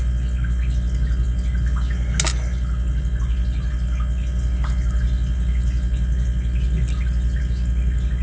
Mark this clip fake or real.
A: real